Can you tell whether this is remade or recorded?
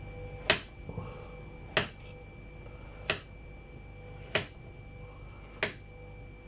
recorded